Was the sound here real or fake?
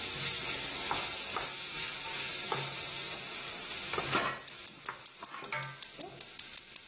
real